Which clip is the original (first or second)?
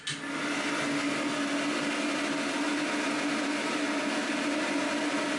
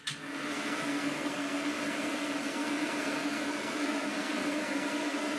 first